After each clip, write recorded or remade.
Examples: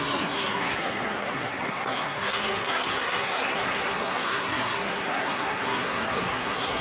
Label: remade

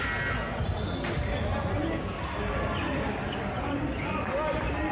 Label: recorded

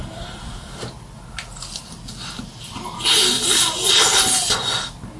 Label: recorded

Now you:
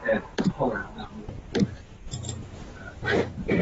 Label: recorded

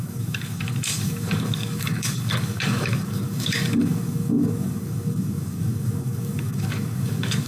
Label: remade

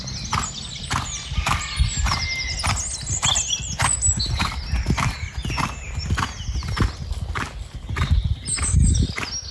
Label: recorded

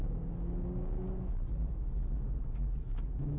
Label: recorded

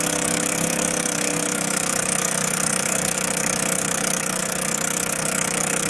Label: remade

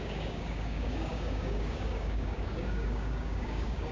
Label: remade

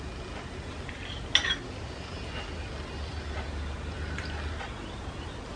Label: recorded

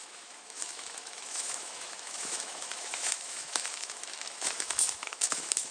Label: remade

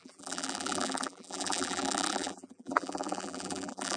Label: remade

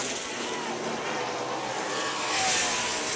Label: recorded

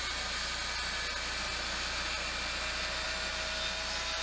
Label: recorded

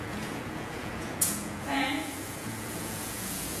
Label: remade